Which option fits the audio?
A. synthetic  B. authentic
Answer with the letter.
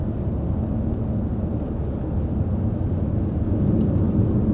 B